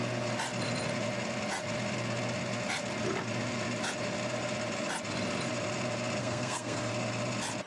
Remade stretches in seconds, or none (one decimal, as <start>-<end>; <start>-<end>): 6.2-6.9